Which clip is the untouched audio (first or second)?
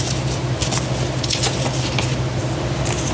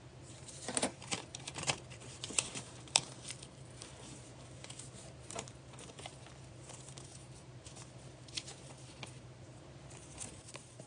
first